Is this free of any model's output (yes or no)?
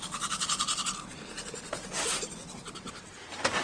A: yes